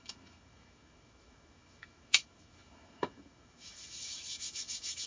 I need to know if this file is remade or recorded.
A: remade